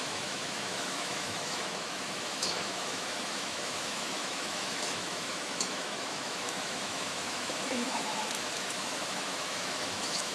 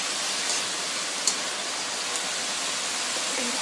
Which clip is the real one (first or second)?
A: second